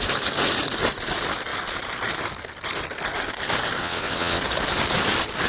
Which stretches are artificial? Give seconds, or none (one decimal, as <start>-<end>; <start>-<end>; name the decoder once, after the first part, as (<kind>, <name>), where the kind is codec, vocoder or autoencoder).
3.8-4.4 (vocoder, WaveNeXt)